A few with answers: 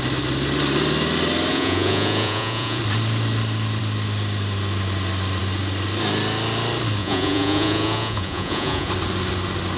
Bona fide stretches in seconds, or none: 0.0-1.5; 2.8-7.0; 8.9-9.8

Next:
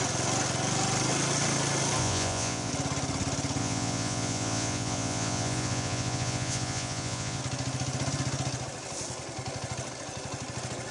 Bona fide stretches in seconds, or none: 0.0-2.0; 2.7-3.6; 7.4-10.9

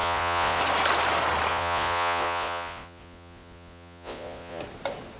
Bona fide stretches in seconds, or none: 0.6-1.5; 4.6-5.2

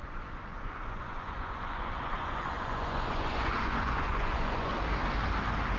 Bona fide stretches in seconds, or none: 4.7-5.8

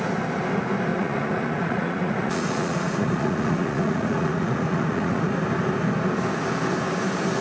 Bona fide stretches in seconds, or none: 0.0-0.9; 5.3-7.4

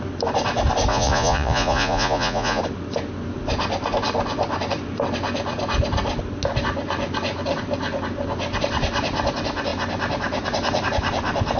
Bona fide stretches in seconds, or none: 0.0-0.9; 2.6-11.6

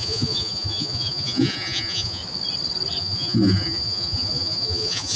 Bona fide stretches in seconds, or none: 2.2-3.0